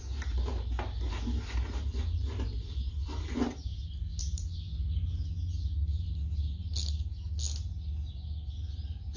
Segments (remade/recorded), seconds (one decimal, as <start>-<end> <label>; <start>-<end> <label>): 0.0-9.2 recorded